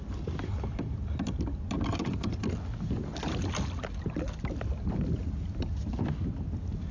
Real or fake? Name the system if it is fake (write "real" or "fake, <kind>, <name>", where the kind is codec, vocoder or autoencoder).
real